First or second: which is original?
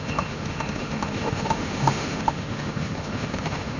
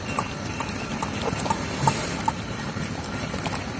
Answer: second